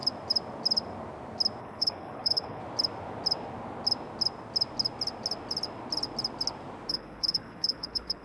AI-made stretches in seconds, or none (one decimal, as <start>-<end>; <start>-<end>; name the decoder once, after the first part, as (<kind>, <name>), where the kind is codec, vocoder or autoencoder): 1.6-2.6 (codec, HILCodec); 6.9-8.2